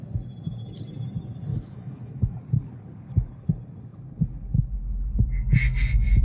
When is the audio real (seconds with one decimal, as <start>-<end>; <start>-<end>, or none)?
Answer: 0.0-1.5; 2.4-6.2

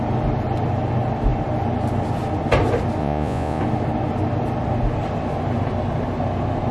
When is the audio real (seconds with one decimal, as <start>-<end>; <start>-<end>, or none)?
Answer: 0.0-3.0; 3.6-6.7

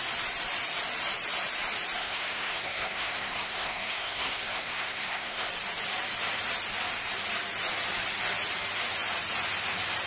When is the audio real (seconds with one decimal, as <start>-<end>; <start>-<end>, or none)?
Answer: 0.0-2.0; 5.5-10.1

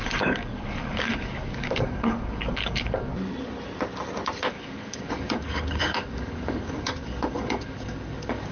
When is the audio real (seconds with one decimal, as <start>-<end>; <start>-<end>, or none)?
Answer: 3.1-4.5

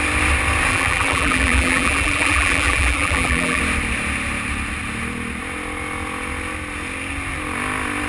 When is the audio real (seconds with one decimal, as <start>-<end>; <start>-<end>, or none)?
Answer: 0.0-0.7; 3.6-8.1

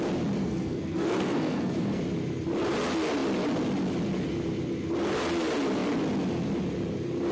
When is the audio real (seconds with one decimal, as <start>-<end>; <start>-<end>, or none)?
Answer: 0.0-0.4; 2.0-7.3